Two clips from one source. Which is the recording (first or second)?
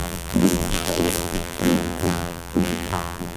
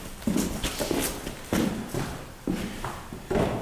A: second